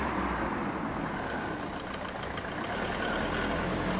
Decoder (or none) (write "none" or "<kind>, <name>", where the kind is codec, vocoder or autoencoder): none